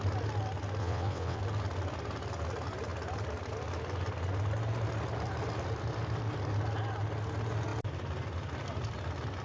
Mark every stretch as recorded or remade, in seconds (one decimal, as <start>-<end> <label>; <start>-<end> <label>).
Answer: 0.0-0.8 recorded; 0.8-1.4 remade; 1.4-9.4 recorded